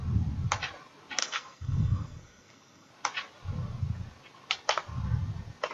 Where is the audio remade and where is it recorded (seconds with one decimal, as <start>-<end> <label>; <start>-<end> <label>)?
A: 0.0-1.2 recorded; 1.2-2.9 remade; 2.9-5.7 recorded